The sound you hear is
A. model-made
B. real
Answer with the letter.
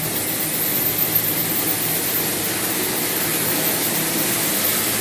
B